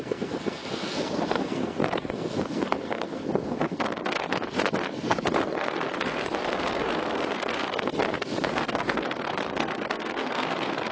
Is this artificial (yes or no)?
yes